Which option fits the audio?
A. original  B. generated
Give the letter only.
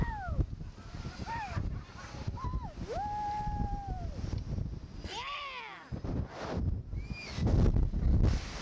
A